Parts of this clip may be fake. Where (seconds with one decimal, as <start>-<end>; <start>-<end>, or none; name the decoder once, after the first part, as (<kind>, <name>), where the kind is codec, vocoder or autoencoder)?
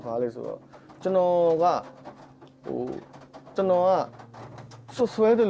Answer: 4.4-5.0 (codec, SNAC)